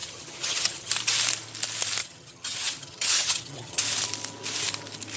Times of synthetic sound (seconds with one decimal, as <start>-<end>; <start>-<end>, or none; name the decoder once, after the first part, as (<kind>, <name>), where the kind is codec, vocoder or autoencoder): 0.0-0.9 (vocoder, HiFi-GAN); 2.0-3.8